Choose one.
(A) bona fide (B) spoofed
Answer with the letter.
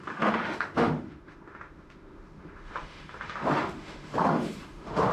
B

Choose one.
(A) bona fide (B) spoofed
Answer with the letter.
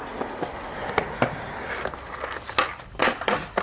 A